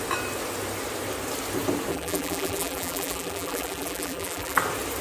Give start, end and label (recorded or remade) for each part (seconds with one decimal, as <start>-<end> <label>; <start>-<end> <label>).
0.0-1.9 recorded; 1.9-4.6 remade; 4.6-5.0 recorded